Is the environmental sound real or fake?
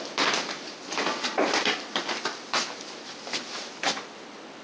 real